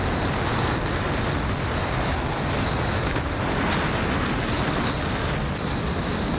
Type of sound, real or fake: real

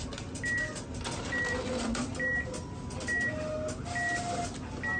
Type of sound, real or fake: real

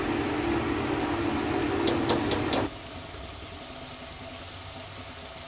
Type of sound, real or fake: real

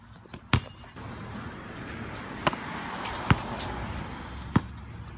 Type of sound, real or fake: real